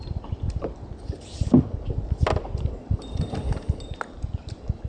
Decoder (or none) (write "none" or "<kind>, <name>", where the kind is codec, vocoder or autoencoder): none